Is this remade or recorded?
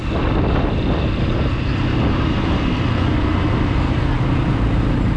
recorded